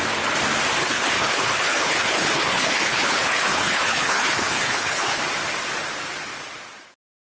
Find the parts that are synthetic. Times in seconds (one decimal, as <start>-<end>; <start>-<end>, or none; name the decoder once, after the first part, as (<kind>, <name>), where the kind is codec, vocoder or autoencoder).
0.8-5.2 (codec, HILCodec)